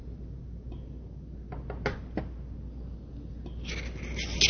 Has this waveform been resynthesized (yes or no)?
no